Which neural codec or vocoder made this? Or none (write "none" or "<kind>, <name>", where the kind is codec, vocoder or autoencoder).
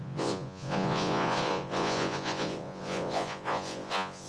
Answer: vocoder, Vocos